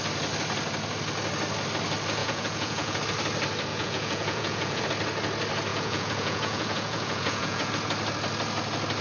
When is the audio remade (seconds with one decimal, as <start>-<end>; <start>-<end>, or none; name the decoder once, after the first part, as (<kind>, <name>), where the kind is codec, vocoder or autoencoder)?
2.2-3.0 (vocoder, Vocos); 3.7-4.8; 5.7-7.7